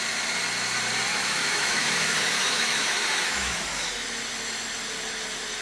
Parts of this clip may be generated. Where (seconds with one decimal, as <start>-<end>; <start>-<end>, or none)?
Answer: 1.1-3.9